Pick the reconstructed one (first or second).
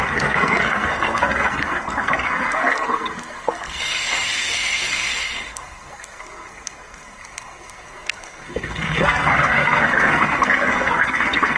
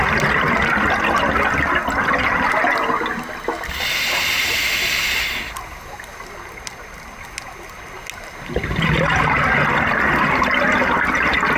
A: first